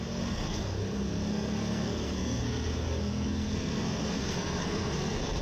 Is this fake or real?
fake